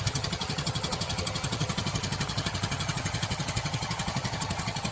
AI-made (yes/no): yes